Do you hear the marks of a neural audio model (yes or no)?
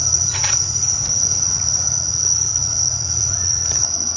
yes